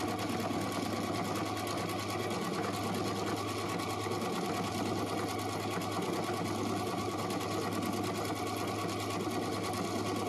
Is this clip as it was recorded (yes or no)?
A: yes